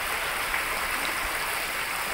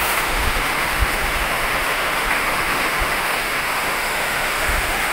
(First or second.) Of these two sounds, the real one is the first